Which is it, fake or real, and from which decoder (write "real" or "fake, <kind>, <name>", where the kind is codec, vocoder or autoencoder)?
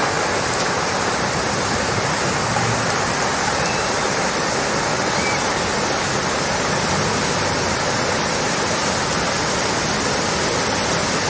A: real